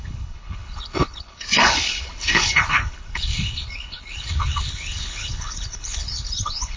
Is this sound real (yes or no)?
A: no